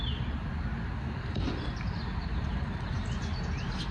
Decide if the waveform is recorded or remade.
recorded